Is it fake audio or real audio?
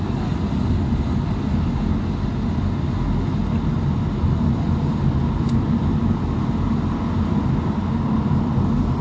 real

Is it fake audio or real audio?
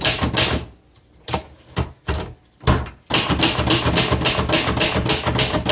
real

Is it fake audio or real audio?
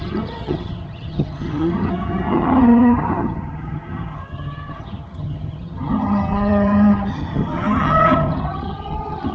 fake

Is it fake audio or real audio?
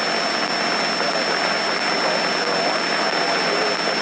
real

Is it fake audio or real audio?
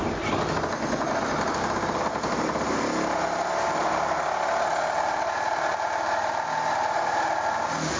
real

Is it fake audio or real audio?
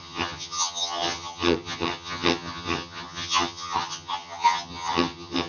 fake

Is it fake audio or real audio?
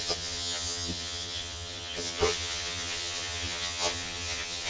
fake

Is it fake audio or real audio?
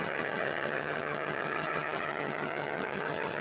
fake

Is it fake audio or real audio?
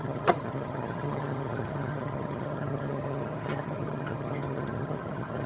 fake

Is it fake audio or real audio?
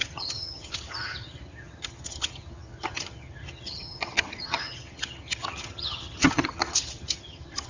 fake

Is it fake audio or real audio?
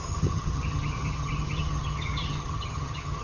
fake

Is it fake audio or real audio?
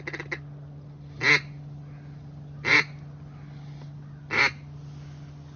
real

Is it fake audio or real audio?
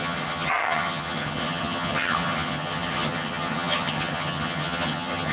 fake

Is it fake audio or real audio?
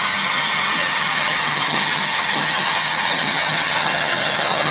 fake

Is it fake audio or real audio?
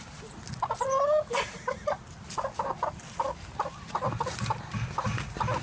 real